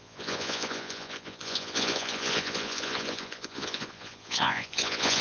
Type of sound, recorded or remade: remade